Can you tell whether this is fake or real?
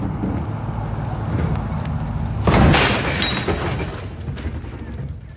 real